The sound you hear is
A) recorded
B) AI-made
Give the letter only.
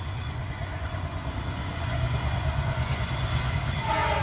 B